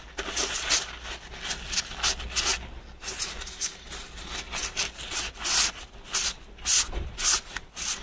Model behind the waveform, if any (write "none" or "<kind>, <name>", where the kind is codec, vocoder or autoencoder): none